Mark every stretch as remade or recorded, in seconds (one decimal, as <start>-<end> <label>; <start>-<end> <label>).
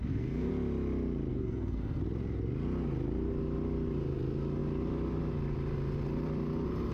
0.0-0.5 remade; 0.5-1.3 recorded; 1.3-2.0 remade; 2.0-6.9 recorded